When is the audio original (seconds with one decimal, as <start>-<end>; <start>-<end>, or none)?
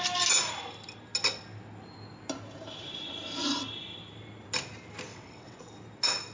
0.0-5.1; 5.7-6.3